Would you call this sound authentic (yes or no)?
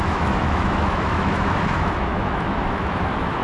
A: no